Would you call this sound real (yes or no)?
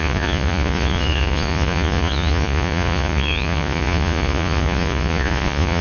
no